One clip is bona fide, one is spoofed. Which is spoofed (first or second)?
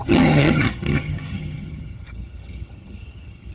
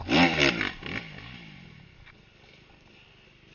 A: first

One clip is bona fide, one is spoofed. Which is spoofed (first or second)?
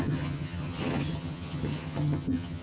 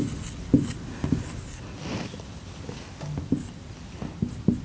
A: first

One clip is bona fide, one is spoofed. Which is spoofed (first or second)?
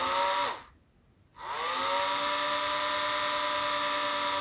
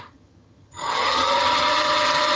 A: second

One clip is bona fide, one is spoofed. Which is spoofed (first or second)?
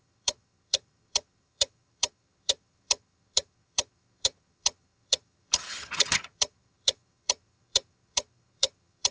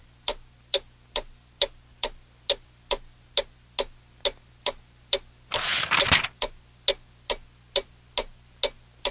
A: first